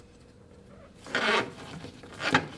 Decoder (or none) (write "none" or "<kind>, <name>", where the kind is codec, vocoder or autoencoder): none